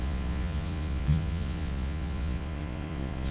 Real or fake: fake